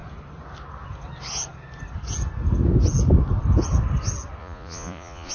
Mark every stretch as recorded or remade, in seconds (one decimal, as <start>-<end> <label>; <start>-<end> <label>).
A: 0.0-4.4 recorded; 4.4-5.3 remade